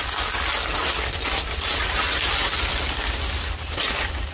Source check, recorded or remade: recorded